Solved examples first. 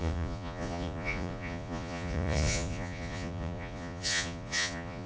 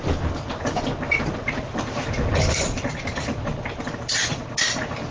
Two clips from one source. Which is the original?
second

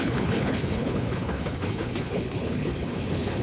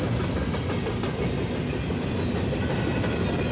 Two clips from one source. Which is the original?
second